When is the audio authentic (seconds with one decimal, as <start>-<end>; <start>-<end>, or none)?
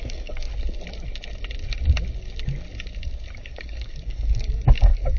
0.5-3.4